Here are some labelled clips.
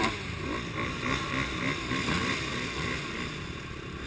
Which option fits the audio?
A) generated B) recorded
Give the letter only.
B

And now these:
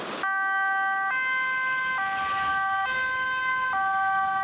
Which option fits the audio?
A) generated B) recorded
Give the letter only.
B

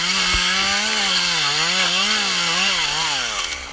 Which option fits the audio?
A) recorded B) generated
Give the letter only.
A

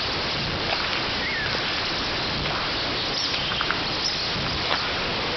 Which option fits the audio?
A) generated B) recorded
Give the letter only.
B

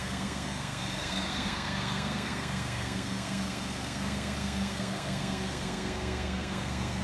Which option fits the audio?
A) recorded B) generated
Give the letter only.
B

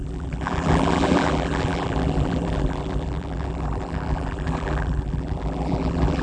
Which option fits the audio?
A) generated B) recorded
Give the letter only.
A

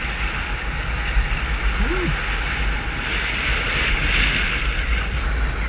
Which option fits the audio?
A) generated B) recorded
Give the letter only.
B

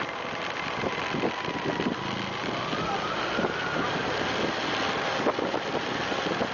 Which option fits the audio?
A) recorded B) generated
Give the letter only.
A